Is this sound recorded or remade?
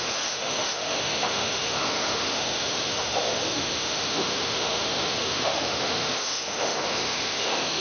remade